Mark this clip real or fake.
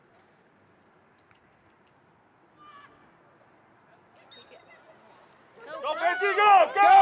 real